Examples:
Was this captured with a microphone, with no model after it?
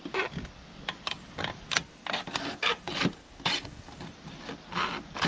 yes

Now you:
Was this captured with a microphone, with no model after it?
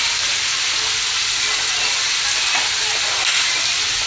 yes